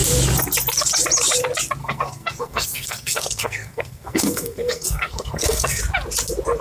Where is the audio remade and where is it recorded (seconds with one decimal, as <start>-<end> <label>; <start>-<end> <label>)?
0.0-1.8 recorded; 1.8-5.8 remade; 5.8-6.6 recorded